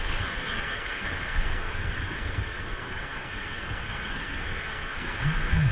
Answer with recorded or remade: remade